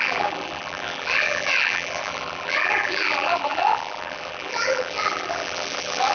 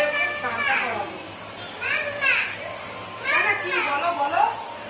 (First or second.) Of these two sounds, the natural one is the second